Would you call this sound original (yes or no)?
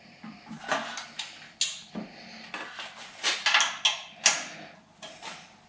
yes